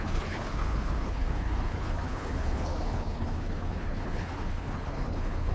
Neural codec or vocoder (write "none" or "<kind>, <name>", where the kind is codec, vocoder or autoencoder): codec, HILCodec